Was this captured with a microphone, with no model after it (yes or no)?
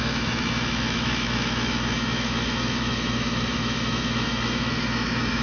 no